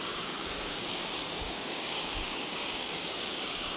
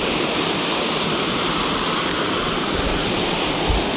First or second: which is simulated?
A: first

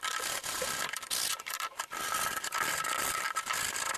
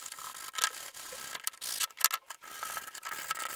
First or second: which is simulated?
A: first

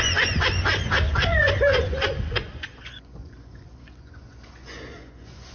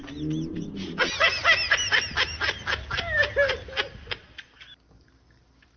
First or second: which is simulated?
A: first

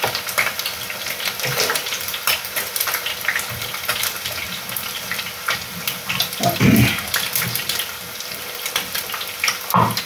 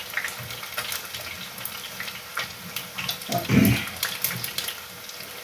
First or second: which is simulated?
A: first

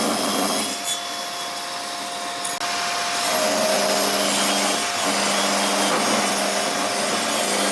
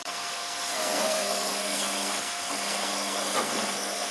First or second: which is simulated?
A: second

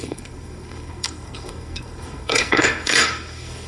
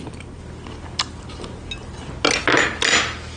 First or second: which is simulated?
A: first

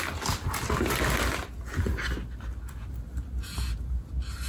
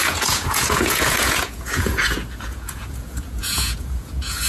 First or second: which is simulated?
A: second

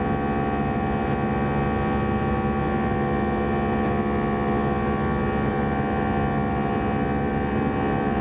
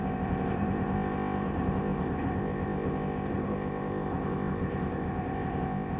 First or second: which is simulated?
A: second